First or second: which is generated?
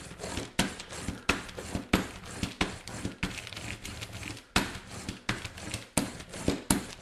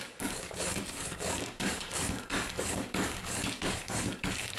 second